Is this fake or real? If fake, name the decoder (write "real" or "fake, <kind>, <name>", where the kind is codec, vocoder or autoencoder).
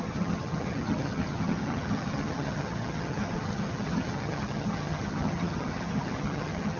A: fake, vocoder, HiFi-GAN